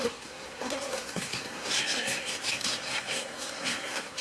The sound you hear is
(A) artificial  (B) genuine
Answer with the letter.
A